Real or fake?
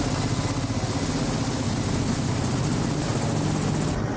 real